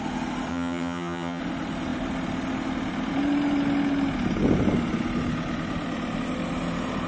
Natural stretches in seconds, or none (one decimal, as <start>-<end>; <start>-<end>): 0.0-0.5; 1.4-7.1